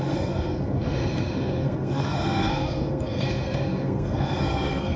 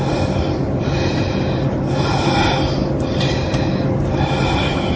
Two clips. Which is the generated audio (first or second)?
first